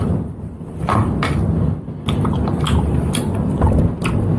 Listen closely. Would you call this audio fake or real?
fake